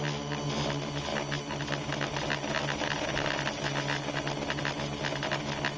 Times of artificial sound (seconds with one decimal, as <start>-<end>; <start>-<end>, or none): none